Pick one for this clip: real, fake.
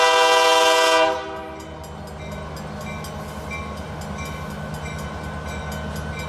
real